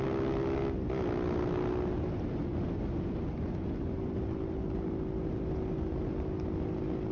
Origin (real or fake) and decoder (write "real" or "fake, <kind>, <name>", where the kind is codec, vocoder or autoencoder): real